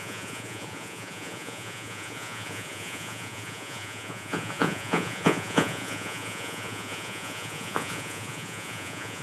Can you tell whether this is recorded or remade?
remade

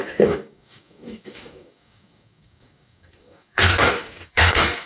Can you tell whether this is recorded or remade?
remade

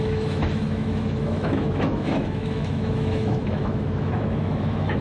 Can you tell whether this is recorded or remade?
remade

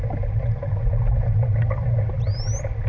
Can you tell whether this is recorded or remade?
recorded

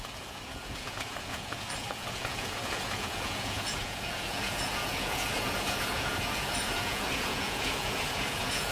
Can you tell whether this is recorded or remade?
remade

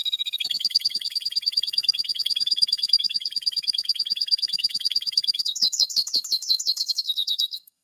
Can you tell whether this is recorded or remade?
remade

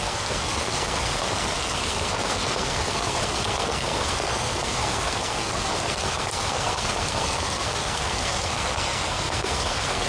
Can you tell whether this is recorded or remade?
remade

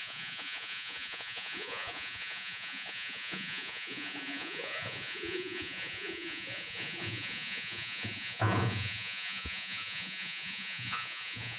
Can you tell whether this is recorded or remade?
remade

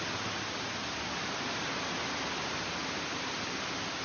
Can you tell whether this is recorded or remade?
recorded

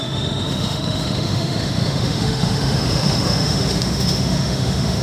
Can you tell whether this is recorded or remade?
remade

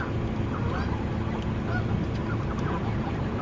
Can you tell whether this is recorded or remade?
recorded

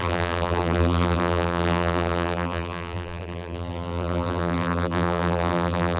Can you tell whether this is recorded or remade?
remade